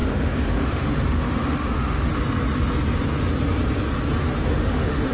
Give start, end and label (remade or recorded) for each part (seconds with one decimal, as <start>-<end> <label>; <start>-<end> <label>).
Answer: 0.0-2.1 remade; 2.1-4.2 recorded; 4.2-5.1 remade